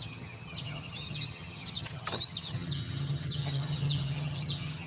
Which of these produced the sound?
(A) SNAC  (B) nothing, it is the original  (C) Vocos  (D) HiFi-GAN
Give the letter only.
D